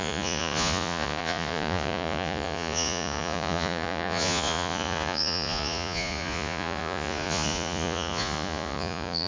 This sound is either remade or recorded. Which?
remade